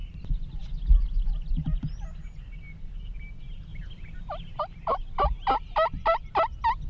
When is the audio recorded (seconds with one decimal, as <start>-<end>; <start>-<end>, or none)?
0.0-6.9